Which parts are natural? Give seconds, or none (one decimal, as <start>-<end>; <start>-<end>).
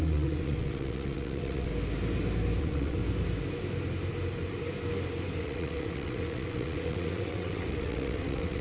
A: 1.7-2.6; 3.0-5.4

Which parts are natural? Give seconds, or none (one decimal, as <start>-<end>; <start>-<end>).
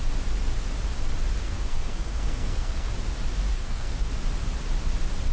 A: 0.0-1.4; 2.9-3.5; 4.1-5.3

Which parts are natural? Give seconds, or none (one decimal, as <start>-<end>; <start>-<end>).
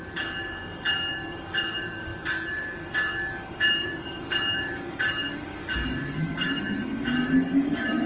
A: none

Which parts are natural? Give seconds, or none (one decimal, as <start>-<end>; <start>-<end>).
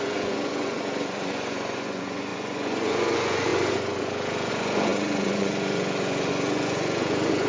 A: none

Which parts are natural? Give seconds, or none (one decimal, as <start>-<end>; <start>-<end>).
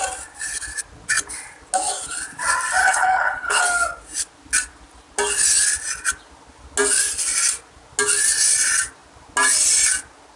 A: 0.0-2.8; 3.6-10.4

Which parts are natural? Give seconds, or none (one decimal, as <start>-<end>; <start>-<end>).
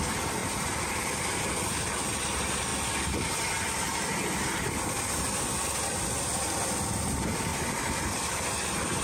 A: 0.0-0.4; 1.5-9.0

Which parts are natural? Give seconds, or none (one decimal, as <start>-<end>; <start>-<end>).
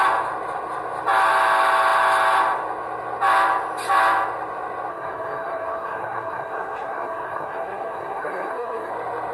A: 0.0-4.9; 8.9-9.3